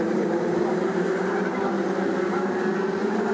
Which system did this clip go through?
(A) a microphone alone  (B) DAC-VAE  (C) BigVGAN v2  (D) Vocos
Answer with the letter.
C